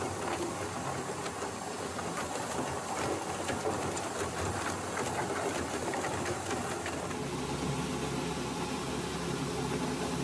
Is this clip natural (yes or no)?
yes